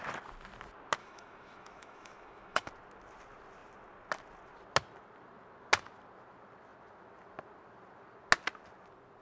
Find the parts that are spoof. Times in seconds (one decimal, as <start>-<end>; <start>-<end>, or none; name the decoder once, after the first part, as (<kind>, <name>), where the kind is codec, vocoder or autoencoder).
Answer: 1.0-2.7 (autoencoder, DAC-VAE)